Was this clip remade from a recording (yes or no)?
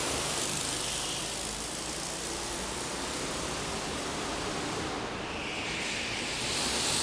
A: no